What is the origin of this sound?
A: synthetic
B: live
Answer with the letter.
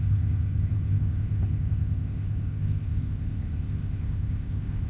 A